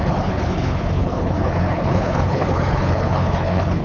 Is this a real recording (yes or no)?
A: no